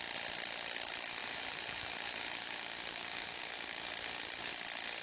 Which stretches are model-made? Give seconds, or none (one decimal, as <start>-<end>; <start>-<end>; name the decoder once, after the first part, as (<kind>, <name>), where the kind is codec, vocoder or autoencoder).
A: 1.2-3.4 (vocoder, BigVGAN v2)